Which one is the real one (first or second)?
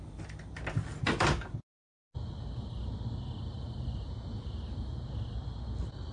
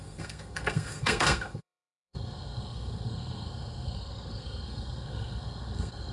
first